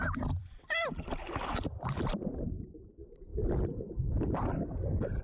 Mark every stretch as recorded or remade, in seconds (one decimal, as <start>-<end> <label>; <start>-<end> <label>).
0.0-3.3 remade; 3.3-3.9 recorded; 3.9-5.2 remade